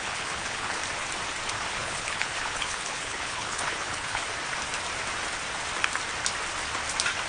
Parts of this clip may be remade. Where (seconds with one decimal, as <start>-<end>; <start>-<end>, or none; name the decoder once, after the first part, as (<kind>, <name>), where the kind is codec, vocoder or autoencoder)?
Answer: 0.0-0.8 (codec, HILCodec); 1.7-4.2